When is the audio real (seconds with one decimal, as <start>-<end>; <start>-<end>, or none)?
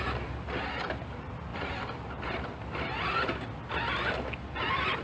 0.0-5.0